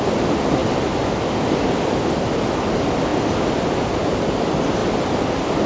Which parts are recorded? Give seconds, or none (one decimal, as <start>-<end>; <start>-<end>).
0.0-5.7